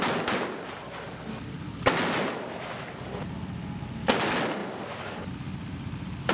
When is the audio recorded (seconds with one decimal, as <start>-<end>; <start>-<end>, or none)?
0.0-6.3